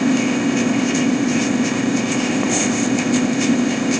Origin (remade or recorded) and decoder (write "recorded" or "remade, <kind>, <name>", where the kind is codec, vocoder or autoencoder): remade, codec, ZipCodec